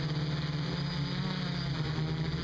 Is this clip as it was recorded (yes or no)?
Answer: yes